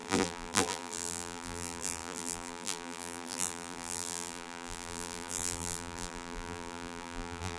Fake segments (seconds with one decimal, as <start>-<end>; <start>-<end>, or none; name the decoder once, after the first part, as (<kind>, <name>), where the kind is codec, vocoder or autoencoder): 0.0-7.6 (vocoder, BigVGAN v2)